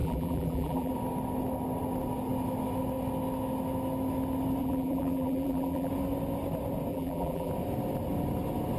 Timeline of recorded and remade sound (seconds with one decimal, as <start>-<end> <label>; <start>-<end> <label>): 0.0-0.9 remade; 0.9-4.6 recorded; 4.6-5.9 remade; 5.9-6.9 recorded; 6.9-7.5 remade; 7.5-8.8 recorded